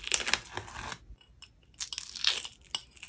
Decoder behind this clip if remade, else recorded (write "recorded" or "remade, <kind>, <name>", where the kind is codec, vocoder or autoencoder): recorded